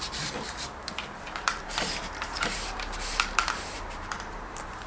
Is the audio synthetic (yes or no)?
yes